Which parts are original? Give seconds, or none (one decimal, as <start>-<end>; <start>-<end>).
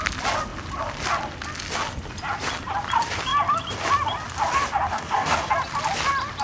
0.0-4.9; 5.5-6.4